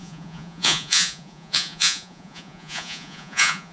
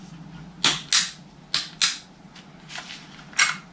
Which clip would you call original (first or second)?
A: second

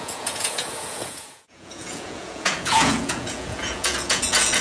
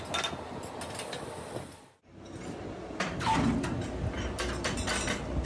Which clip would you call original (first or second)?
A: second